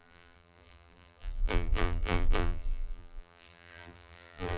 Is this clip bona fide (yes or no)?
no